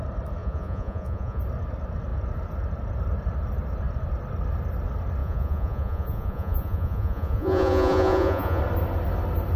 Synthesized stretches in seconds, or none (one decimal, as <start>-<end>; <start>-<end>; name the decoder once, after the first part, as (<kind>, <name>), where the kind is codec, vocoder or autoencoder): 0.4-1.4 (vocoder, Vocos); 5.2-8.6